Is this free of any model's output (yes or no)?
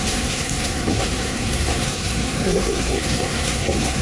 no